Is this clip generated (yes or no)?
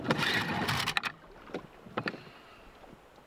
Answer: no